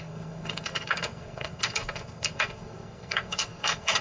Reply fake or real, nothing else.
fake